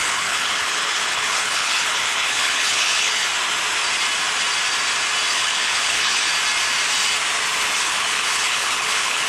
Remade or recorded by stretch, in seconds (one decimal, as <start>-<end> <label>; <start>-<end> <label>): 0.0-3.3 remade; 3.3-5.3 recorded; 5.3-6.3 remade; 6.3-7.8 recorded; 7.8-9.3 remade